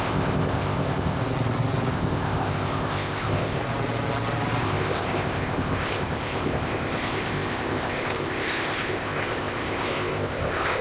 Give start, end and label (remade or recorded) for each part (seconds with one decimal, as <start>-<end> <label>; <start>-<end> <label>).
0.0-1.2 remade; 1.2-1.9 recorded; 1.9-3.6 remade; 3.6-4.6 recorded; 4.6-10.8 remade